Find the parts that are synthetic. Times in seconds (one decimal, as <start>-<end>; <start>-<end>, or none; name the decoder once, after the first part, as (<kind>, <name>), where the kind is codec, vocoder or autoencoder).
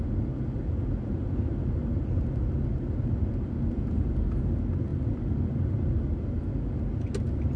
none